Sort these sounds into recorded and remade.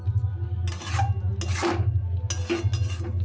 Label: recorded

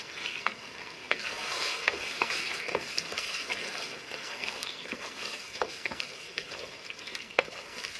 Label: remade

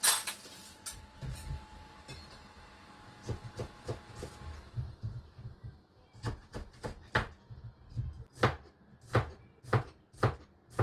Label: recorded